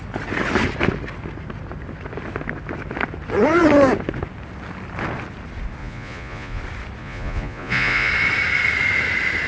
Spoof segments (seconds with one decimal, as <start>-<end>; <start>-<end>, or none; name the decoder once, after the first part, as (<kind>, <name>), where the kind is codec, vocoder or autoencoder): 5.8-6.6 (vocoder, Vocos); 7.0-8.1